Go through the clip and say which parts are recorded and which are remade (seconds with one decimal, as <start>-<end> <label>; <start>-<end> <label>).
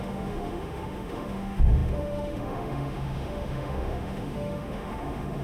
0.0-5.4 remade